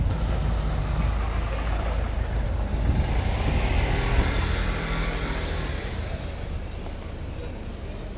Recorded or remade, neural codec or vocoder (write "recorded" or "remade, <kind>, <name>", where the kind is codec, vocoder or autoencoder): recorded